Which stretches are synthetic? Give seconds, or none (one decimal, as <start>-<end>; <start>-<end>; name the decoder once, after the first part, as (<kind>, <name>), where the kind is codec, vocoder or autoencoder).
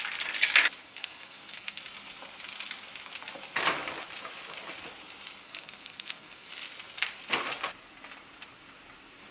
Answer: 0.8-1.8 (codec, SNAC); 5.4-6.5